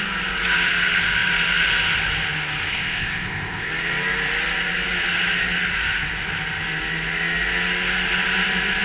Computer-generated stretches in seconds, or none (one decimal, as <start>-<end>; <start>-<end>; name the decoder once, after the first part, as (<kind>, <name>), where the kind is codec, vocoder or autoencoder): 2.7-3.7 (codec, ZipCodec)